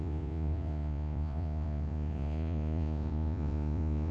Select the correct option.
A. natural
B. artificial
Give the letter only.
B